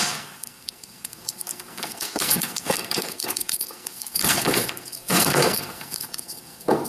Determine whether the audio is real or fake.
fake